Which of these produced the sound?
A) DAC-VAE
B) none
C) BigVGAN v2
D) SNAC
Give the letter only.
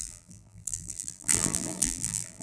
C